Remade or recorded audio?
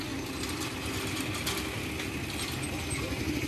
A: recorded